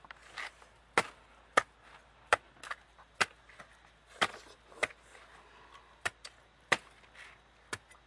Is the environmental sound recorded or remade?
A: recorded